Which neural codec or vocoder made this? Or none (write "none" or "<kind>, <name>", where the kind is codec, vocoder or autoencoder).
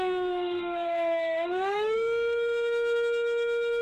codec, SNAC